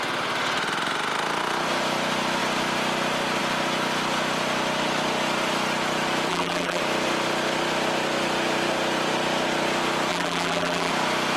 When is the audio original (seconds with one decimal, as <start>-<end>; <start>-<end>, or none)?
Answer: 0.0-6.3; 6.8-10.1; 10.9-11.4